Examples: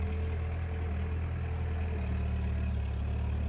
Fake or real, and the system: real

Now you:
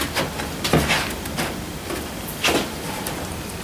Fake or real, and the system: real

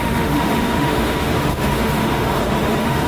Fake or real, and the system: fake, autoencoder, DAC-VAE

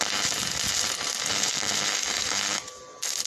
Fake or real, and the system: real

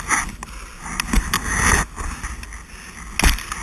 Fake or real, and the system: real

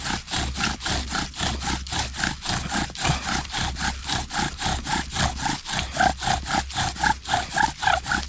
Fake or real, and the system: real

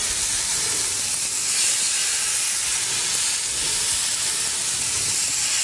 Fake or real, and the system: real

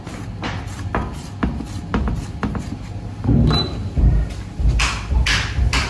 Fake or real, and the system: real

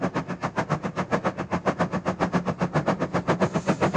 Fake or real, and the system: real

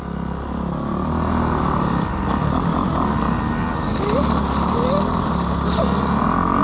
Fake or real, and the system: real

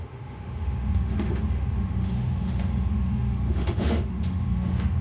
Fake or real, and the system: fake, autoencoder, DAC-VAE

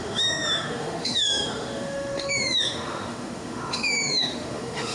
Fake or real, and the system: fake, autoencoder, DAC-VAE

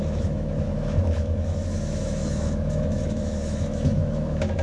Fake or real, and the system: fake, autoencoder, DAC-VAE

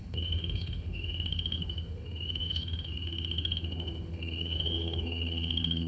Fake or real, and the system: fake, autoencoder, DAC-VAE